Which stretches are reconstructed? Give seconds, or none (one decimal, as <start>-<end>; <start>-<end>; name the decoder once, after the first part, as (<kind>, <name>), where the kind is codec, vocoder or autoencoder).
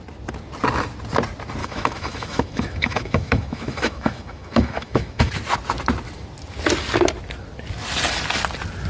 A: 1.6-5.3 (autoencoder, DAC-VAE)